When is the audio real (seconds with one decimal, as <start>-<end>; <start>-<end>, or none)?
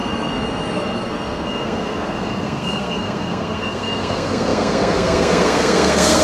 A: none